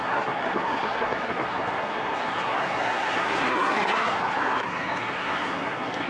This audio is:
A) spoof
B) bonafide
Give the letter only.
A